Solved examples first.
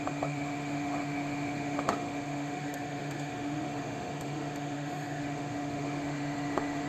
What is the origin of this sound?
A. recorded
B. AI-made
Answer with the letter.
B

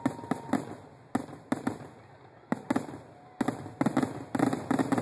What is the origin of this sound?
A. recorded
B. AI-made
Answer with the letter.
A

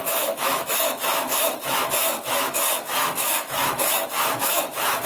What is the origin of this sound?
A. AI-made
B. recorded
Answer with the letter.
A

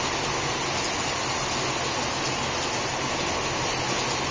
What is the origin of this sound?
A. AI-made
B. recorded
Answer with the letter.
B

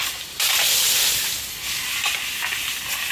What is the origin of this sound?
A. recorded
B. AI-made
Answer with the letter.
A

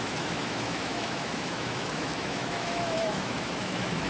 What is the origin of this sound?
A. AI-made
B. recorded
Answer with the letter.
A